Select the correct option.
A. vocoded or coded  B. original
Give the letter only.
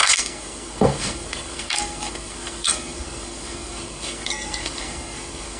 A